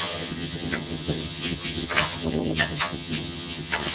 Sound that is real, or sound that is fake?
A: fake